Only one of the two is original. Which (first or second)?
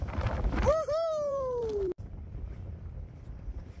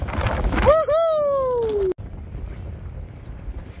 second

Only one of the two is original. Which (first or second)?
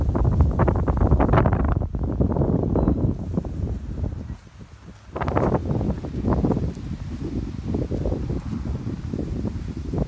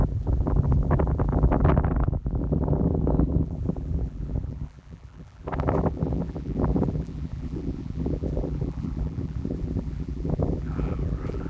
first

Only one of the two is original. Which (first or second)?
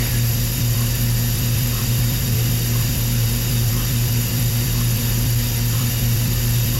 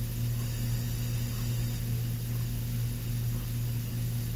second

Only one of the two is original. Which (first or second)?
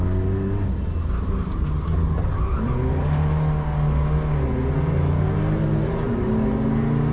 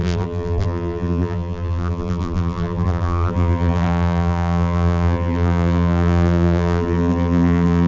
first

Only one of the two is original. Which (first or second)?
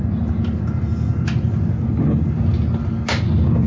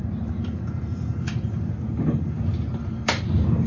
first